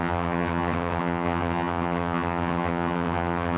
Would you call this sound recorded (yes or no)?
no